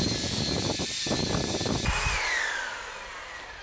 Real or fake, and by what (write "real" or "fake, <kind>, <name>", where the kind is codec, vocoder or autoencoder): real